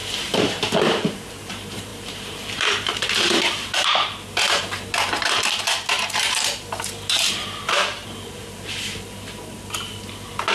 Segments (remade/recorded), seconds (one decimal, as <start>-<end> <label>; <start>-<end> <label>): 0.0-10.5 remade